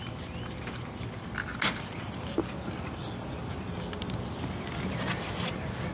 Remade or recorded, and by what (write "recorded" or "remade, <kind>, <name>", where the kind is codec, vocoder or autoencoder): recorded